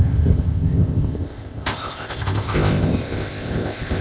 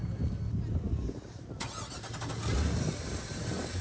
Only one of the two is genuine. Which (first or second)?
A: second